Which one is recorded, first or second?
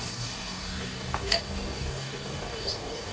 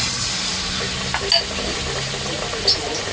second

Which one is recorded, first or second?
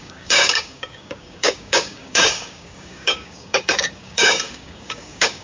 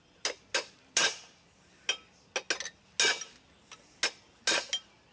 second